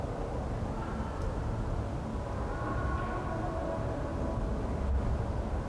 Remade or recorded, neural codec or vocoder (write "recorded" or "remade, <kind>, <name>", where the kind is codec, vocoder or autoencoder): recorded